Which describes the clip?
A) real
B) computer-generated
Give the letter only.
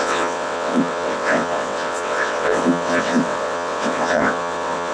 B